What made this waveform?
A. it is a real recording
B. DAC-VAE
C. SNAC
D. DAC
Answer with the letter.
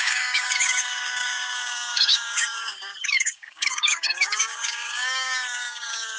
D